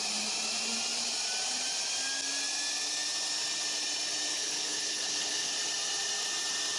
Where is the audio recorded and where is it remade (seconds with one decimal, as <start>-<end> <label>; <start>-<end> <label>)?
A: 0.0-4.3 recorded; 4.3-5.5 remade; 5.5-6.8 recorded